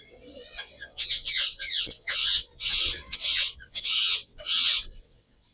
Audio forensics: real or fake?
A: fake